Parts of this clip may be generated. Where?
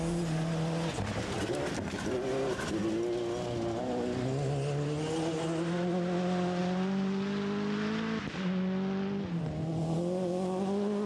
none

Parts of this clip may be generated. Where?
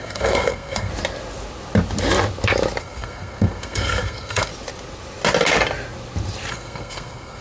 0.0-0.9; 2.8-4.5; 6.5-7.4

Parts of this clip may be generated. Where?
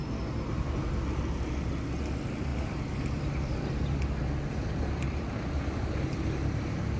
2.5-3.7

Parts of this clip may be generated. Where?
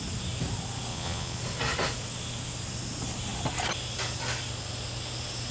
0.9-1.4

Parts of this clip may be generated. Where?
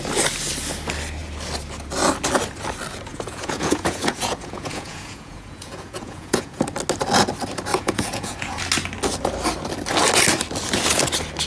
3.1-6.6; 7.7-8.6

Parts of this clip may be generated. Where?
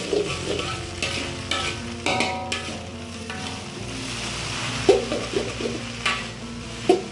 none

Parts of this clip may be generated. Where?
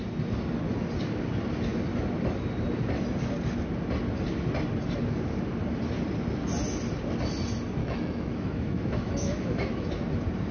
7.8-9.9